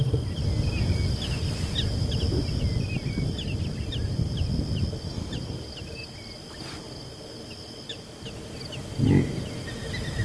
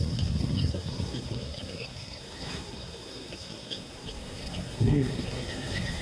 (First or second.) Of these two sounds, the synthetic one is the second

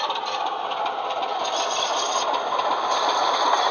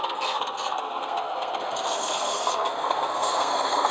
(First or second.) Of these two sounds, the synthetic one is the second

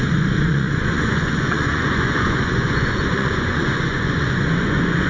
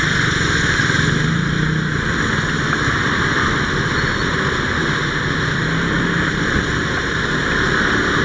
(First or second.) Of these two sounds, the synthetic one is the first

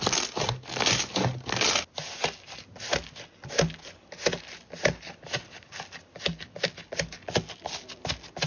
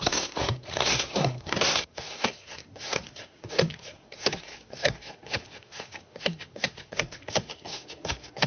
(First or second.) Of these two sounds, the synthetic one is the second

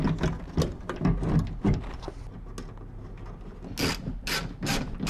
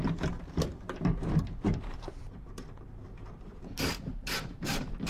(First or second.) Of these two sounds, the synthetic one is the second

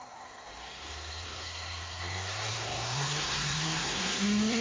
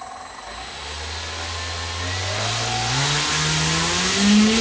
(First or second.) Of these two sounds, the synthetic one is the first